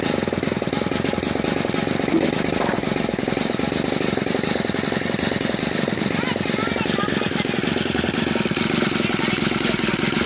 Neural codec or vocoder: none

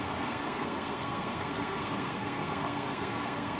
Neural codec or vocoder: codec, SNAC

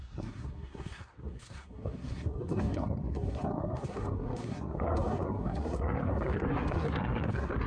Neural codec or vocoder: codec, SNAC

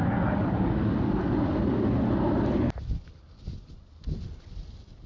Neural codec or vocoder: none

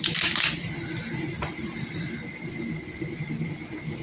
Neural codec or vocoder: none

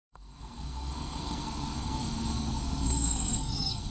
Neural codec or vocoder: codec, SNAC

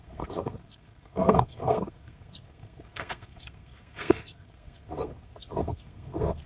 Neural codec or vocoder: codec, SNAC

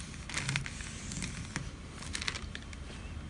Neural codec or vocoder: none